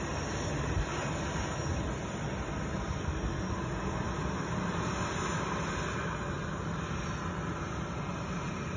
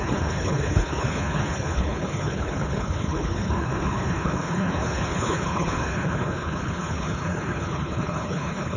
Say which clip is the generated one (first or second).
second